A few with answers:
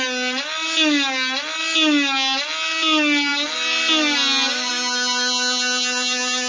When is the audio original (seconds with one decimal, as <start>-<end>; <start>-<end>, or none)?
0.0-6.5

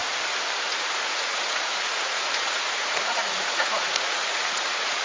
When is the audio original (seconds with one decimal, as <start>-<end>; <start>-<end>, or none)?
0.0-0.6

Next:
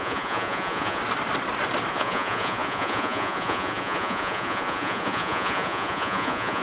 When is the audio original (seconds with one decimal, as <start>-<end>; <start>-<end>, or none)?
1.0-1.9

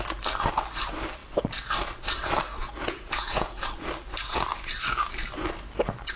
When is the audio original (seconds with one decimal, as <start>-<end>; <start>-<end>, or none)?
0.0-2.6; 3.6-6.2

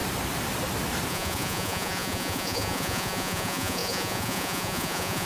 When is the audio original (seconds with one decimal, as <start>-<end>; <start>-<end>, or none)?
0.0-1.1